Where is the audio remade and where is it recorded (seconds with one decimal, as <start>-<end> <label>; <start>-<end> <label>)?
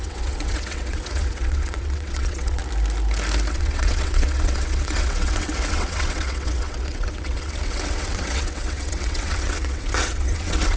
0.0-2.6 remade; 2.6-3.5 recorded; 3.5-10.8 remade